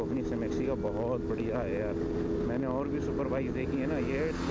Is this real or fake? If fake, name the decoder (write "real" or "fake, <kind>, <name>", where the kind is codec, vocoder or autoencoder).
real